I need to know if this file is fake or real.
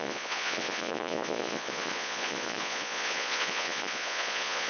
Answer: fake